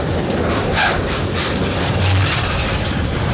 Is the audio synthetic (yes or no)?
no